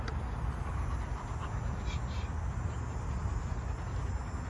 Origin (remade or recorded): recorded